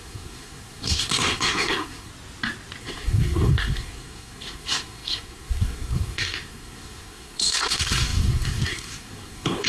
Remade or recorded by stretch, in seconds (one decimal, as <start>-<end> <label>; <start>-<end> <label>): 0.0-2.1 remade; 2.1-2.8 recorded; 2.8-9.7 remade